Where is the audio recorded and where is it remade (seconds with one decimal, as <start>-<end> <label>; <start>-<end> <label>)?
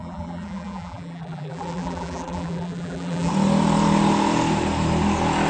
0.0-3.3 remade; 3.3-5.5 recorded